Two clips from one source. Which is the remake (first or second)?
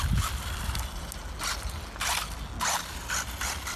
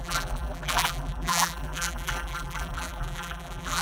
second